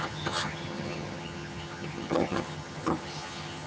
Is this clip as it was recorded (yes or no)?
no